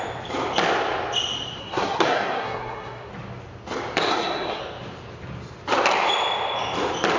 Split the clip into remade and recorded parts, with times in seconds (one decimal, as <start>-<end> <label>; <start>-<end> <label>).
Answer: 0.0-1.6 recorded; 1.6-3.1 remade; 3.1-4.1 recorded; 4.1-4.6 remade; 4.6-7.2 recorded